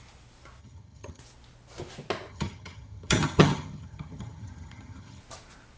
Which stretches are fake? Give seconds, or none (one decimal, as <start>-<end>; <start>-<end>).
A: 0.6-1.2; 2.3-5.2